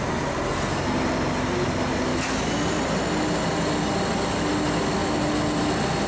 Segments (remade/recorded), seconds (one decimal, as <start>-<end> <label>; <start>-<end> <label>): 0.0-6.1 recorded